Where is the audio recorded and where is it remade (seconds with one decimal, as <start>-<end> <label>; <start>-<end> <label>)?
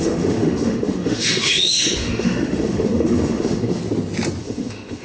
0.0-3.8 remade; 3.8-4.4 recorded; 4.4-5.0 remade